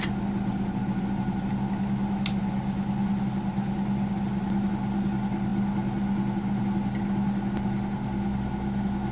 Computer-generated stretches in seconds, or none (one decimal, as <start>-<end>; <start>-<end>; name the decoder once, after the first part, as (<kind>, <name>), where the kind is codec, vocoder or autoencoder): none